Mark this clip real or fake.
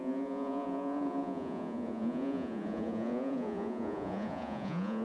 fake